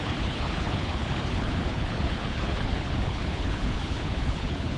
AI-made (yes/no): yes